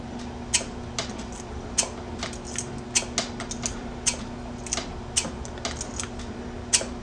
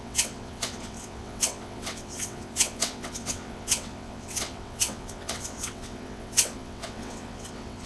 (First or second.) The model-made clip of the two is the second